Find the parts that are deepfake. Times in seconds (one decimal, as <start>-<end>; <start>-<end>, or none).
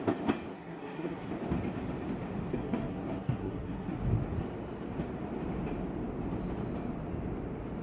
0.5-1.3; 2.5-4.0